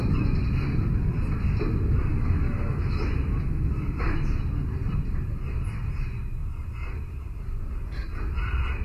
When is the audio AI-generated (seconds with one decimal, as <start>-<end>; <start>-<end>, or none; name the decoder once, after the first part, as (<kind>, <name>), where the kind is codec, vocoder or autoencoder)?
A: 2.1-4.3 (autoencoder, DAC-VAE)